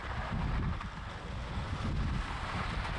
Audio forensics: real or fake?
real